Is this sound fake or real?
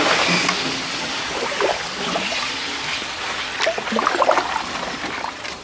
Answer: real